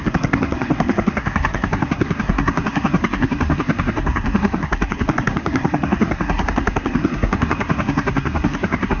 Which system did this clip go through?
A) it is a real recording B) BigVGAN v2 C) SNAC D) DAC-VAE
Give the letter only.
C